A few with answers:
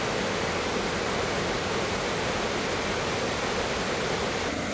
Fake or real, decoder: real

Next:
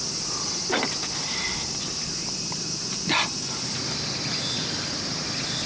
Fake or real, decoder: real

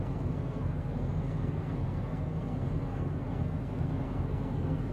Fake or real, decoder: fake, codec, SNAC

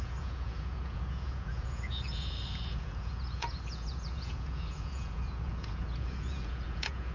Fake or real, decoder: fake, vocoder, Vocos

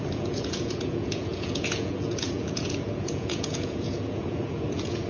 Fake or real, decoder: fake, vocoder, Vocos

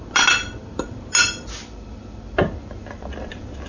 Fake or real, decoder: real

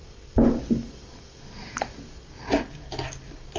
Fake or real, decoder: real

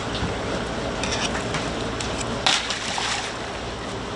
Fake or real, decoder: real